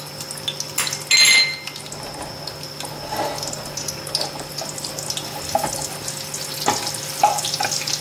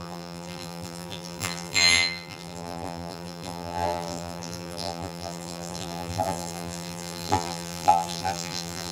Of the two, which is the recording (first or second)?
first